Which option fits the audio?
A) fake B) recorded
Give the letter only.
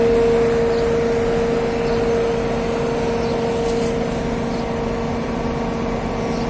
B